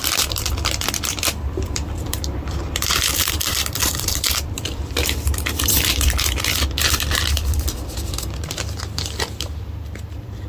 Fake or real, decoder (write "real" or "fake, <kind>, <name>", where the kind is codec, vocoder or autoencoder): fake, vocoder, BigVGAN v2